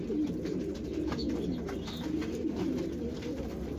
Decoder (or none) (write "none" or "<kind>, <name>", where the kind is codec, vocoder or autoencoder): none